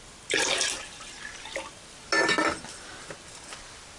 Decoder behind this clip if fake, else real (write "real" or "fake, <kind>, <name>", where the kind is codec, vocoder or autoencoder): real